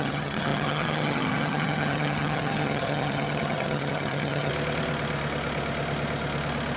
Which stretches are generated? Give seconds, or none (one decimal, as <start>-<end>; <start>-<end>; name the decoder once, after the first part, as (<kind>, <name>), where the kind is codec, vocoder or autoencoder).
0.0-4.5 (vocoder, HiFi-GAN)